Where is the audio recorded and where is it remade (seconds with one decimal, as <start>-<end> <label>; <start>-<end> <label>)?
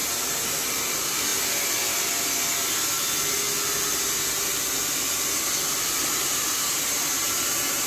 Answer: 0.0-1.3 remade; 1.3-6.0 recorded; 6.0-7.9 remade